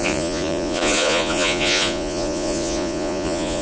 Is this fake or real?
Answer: fake